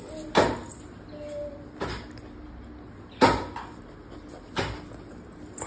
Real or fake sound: real